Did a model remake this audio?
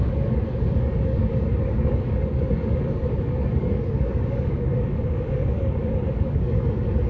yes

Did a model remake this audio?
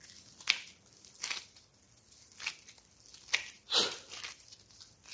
no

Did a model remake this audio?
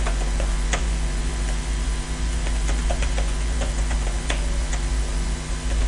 yes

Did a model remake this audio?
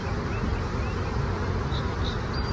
no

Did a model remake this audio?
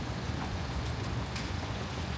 yes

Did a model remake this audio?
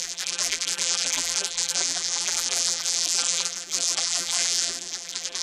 yes